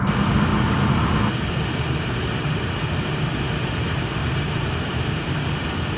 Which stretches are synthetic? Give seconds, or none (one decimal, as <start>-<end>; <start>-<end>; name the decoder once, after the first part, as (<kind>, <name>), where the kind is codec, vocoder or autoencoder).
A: 2.4-3.3 (vocoder, BigVGAN v2); 4.2-5.3